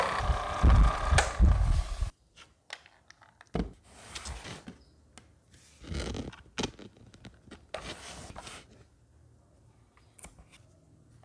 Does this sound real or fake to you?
real